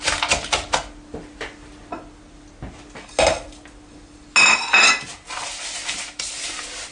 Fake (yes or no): no